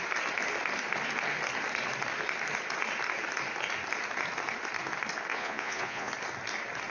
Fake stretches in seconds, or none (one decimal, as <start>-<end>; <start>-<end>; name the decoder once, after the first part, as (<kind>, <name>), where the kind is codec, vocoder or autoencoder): 5.3-6.1 (vocoder, Vocos)